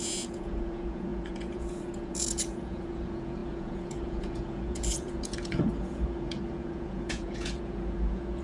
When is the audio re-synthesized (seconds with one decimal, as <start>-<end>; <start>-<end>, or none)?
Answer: 0.0-8.4